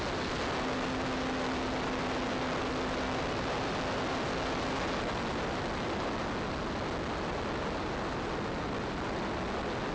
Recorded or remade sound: recorded